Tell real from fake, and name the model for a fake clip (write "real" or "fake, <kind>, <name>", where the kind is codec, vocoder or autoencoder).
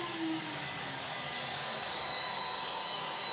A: fake, codec, DAC